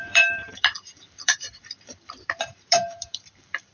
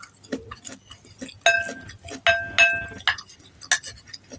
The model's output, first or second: first